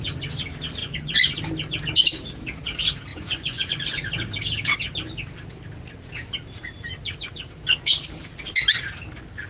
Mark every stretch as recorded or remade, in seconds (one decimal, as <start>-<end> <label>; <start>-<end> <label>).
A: 0.0-0.8 recorded; 0.8-1.4 remade; 1.4-3.1 recorded; 3.1-3.7 remade; 3.7-9.5 recorded